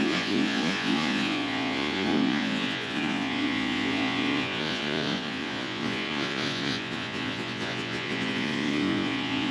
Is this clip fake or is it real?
fake